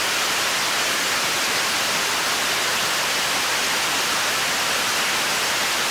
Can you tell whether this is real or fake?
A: real